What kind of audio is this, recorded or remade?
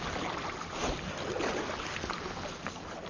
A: recorded